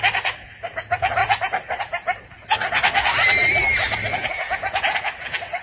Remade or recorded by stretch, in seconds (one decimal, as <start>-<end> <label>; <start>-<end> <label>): 0.0-4.2 recorded; 4.2-5.1 remade; 5.1-5.6 recorded